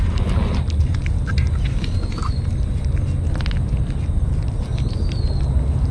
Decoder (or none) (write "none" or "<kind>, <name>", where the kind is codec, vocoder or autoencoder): none